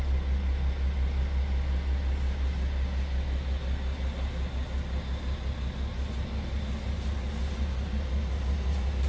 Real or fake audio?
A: real